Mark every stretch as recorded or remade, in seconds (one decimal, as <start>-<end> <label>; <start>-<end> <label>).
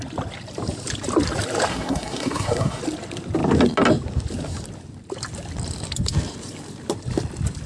0.0-1.7 recorded; 1.7-2.8 remade; 2.8-7.7 recorded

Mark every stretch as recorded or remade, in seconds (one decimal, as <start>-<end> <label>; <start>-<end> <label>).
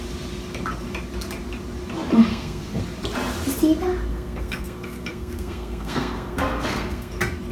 0.0-2.3 recorded; 2.3-2.8 remade; 2.8-4.1 recorded; 4.1-7.1 remade; 7.1-7.5 recorded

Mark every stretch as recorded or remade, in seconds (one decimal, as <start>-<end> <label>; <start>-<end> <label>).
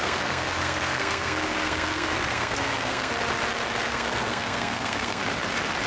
0.0-3.1 remade; 3.1-3.9 recorded; 3.9-5.2 remade; 5.2-5.9 recorded